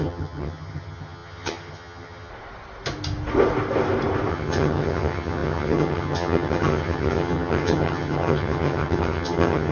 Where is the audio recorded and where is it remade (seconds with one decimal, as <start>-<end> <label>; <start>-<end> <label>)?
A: 0.0-2.3 remade; 2.3-4.3 recorded; 4.3-9.7 remade